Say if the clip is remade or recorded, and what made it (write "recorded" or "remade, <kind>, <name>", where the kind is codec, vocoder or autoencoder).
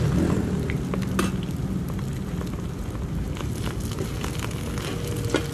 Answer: recorded